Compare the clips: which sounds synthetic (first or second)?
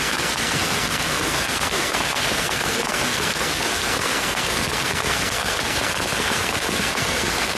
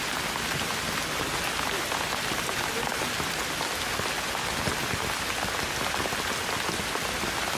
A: first